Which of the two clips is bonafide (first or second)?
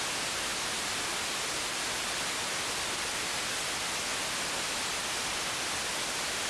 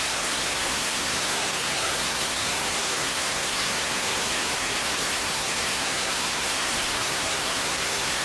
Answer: first